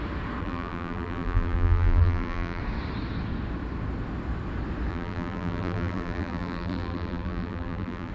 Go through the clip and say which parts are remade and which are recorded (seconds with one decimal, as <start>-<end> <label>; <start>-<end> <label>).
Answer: 0.0-0.4 recorded; 0.4-2.6 remade; 2.6-4.9 recorded; 4.9-8.1 remade